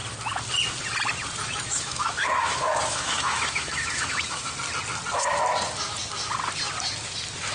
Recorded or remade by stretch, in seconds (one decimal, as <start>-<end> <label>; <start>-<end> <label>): 0.0-1.4 recorded; 1.4-4.5 remade; 4.5-7.5 recorded